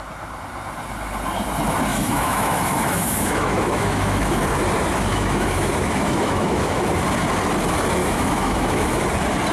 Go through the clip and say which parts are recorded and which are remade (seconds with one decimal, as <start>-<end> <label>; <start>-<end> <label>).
0.0-1.9 recorded; 1.9-4.4 remade; 4.4-5.1 recorded; 5.1-6.8 remade; 6.8-8.0 recorded; 8.0-9.0 remade; 9.0-9.5 recorded